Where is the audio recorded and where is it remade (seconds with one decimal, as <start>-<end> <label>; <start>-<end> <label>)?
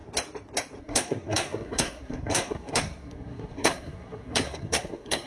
0.0-0.8 recorded; 0.8-5.3 remade